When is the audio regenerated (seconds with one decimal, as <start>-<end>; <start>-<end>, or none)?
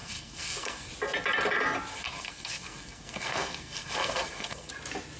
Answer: 0.0-0.9; 1.9-4.7